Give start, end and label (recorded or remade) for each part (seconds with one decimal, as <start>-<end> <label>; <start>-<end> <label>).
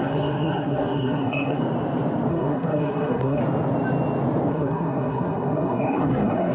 0.0-1.6 remade; 1.6-2.3 recorded; 2.3-3.4 remade; 3.4-4.5 recorded; 4.5-6.5 remade